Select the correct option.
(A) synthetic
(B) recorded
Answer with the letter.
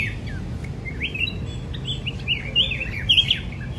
B